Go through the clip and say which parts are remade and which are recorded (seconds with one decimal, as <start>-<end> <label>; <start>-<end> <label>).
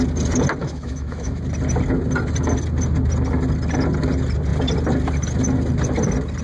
0.0-0.6 recorded; 0.6-1.4 remade; 1.4-6.4 recorded